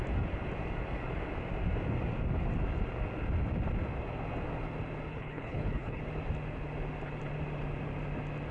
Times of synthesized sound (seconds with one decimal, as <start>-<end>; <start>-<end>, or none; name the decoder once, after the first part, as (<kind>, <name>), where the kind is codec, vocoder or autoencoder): 5.1-6.0 (codec, HILCodec)